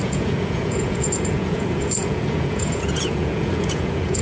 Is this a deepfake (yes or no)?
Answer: yes